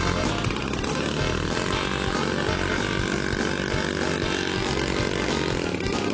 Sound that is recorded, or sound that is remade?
recorded